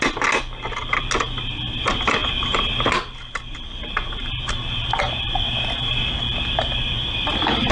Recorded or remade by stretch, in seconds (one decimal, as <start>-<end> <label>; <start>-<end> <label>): 0.0-7.7 recorded